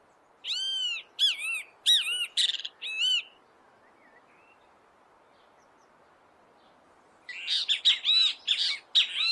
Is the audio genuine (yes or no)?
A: yes